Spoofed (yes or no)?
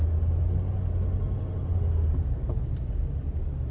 no